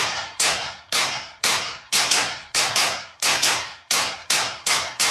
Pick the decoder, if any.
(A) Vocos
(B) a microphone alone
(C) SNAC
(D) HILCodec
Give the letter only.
C